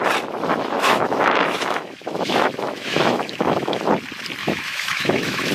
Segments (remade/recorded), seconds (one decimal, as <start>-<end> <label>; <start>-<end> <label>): 0.0-0.5 recorded; 0.5-3.8 remade; 3.8-4.4 recorded; 4.4-5.5 remade